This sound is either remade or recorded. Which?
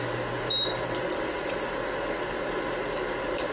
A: recorded